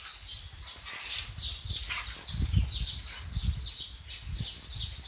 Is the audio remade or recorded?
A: recorded